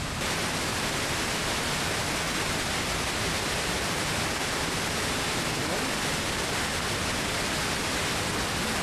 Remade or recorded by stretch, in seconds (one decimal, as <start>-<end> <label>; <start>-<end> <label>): 0.0-8.8 recorded